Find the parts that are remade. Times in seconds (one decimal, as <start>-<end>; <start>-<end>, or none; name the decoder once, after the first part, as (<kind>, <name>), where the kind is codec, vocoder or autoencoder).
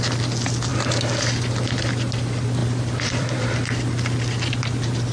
2.6-3.5 (vocoder, BigVGAN v2)